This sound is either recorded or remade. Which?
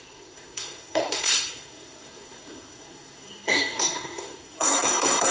remade